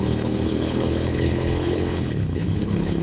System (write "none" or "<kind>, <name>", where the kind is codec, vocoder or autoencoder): codec, HILCodec